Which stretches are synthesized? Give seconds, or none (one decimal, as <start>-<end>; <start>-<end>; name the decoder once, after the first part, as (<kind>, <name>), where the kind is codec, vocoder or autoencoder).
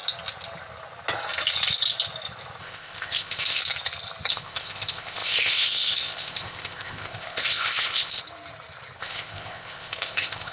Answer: 2.6-3.6 (codec, ZipCodec); 4.3-8.2; 9.0-10.5